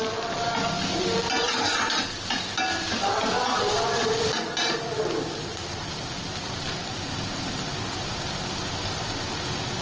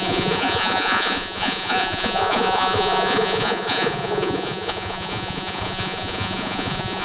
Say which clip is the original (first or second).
first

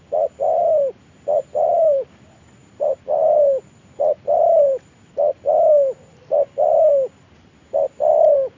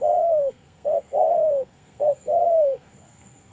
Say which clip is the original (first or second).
first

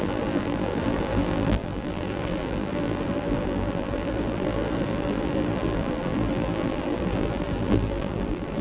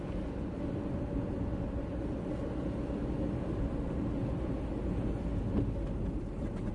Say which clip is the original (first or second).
second